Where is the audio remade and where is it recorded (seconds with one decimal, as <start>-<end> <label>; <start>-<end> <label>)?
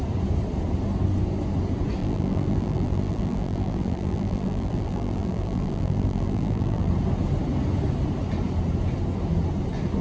0.0-2.0 recorded; 2.0-6.9 remade; 6.9-10.0 recorded